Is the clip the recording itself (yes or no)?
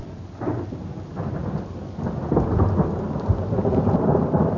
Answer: yes